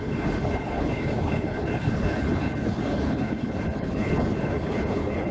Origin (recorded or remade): remade